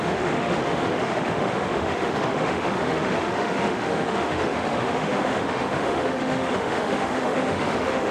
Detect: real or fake fake